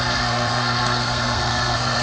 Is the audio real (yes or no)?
no